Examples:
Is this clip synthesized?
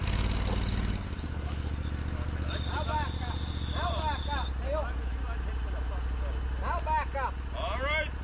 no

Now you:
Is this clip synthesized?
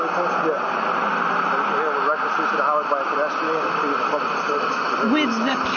no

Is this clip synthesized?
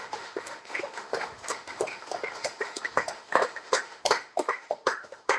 yes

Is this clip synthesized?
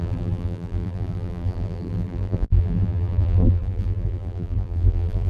yes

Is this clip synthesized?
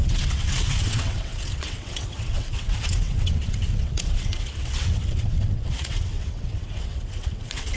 yes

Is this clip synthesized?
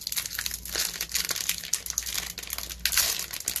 no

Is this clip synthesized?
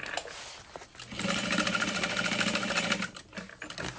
no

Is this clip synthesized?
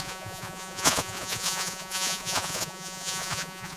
yes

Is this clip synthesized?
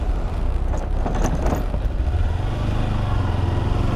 no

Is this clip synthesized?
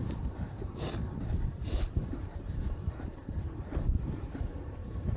yes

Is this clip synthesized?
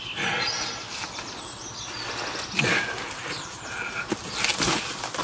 no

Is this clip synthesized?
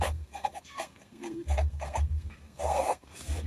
yes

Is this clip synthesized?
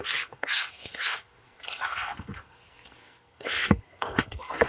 yes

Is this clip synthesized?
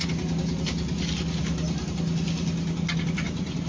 no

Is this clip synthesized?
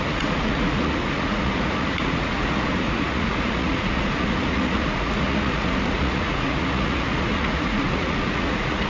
yes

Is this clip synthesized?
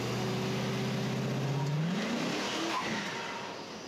no